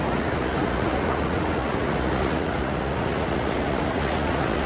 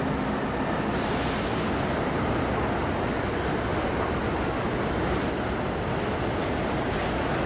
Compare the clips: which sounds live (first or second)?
second